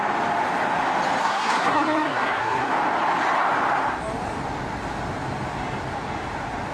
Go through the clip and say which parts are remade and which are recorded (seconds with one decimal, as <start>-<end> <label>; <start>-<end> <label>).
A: 0.0-1.2 recorded; 1.2-2.7 remade; 2.7-6.7 recorded